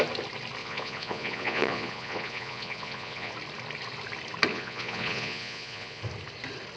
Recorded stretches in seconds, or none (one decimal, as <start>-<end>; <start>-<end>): 0.0-0.6; 3.3-4.5; 6.0-6.8